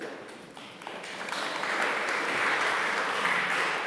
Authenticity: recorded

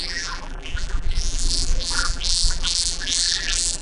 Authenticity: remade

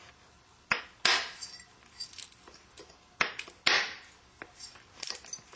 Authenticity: recorded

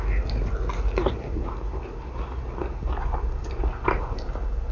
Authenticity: recorded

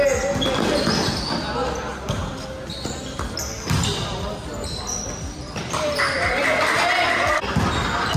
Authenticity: recorded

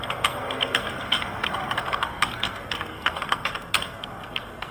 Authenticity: remade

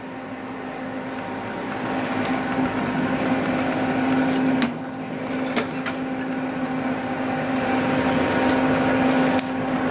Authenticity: recorded